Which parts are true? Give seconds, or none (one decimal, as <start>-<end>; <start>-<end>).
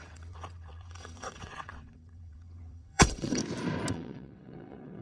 3.4-3.9